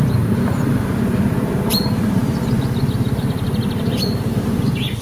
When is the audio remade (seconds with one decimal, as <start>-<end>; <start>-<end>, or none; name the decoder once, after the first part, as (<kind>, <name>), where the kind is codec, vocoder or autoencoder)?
none

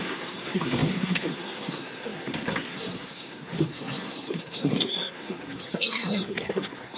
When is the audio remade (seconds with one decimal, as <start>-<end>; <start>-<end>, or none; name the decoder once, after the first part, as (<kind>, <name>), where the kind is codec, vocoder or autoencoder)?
0.0-7.0 (codec, SNAC)

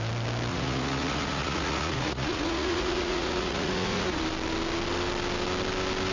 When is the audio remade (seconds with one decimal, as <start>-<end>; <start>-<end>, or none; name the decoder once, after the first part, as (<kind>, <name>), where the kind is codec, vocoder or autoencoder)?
0.5-4.2 (vocoder, Vocos)

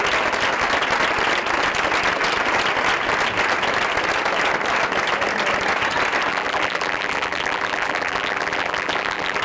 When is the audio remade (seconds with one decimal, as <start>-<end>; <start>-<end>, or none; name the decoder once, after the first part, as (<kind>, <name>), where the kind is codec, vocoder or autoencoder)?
6.3-9.4 (vocoder, BigVGAN v2)

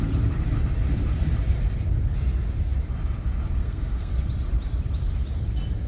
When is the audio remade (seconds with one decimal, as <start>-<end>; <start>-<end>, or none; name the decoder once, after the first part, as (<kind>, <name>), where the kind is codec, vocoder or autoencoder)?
3.6-4.2 (codec, SNAC)

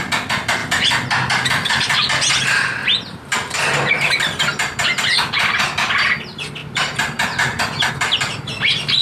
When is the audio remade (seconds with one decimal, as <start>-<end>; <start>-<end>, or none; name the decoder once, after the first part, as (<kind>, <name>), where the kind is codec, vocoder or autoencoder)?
none